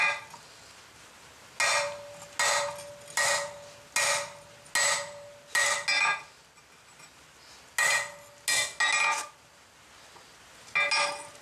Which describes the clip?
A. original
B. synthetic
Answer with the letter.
A